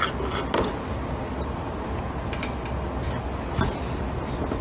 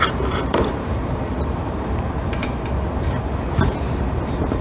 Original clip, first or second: first